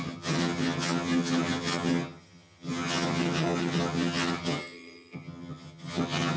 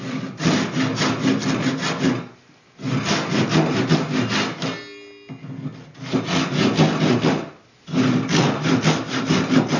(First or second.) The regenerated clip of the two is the first